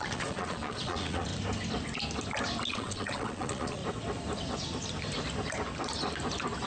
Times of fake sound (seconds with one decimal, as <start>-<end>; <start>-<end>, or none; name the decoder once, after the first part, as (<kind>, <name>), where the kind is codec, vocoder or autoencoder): 0.0-1.3 (vocoder, Vocos); 2.7-3.8